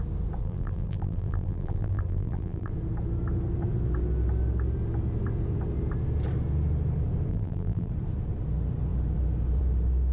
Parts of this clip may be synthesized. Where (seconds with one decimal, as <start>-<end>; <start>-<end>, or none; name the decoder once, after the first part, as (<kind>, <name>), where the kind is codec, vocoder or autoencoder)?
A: 0.4-2.7 (vocoder, BigVGAN v2); 7.3-7.9